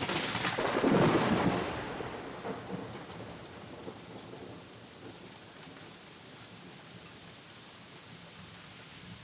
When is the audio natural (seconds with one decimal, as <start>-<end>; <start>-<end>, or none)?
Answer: 0.0-9.2